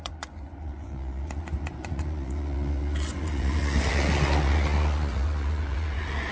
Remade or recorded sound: remade